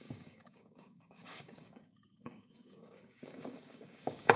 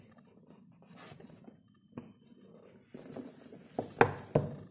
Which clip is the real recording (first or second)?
second